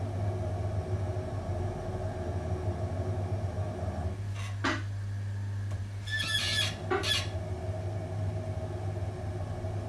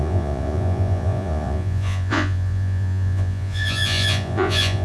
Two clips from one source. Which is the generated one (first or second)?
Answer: second